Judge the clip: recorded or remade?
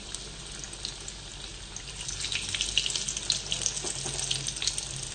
recorded